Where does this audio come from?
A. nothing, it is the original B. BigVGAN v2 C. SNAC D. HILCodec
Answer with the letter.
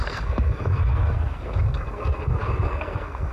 C